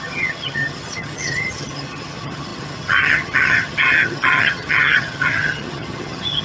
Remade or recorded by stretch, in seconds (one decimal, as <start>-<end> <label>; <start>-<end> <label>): 0.0-6.4 remade